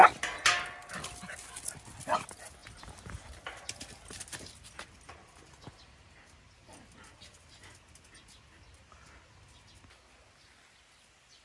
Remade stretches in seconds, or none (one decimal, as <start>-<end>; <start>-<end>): none